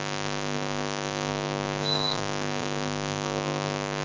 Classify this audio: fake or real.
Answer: fake